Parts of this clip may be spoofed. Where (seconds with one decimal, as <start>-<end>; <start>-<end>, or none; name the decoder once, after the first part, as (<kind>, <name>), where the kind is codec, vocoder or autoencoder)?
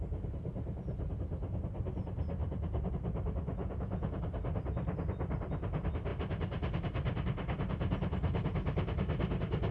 3.6-4.2 (vocoder, Vocos)